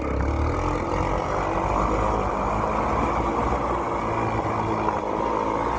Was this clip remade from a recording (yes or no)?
no